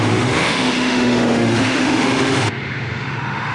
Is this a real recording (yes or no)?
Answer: no